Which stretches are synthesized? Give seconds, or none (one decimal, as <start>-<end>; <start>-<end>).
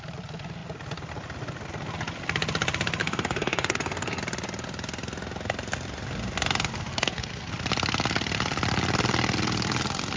3.0-4.2; 6.9-7.5